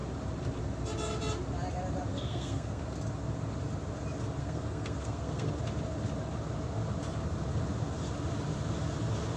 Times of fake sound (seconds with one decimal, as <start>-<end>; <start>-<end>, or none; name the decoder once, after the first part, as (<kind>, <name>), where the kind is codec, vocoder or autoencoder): 2.1-2.8 (codec, SNAC); 4.4-5.5